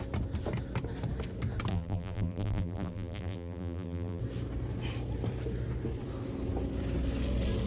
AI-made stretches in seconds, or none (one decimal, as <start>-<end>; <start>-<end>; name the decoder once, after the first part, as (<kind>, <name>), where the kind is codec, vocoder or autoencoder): 1.7-4.2 (vocoder, BigVGAN v2)